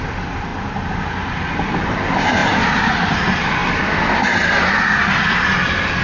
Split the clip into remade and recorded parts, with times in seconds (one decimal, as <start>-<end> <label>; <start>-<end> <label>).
0.0-0.5 remade; 0.5-1.1 recorded; 1.1-6.0 remade